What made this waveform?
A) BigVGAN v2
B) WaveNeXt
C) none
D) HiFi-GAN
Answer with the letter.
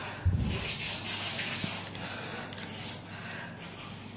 C